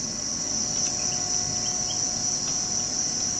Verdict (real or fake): real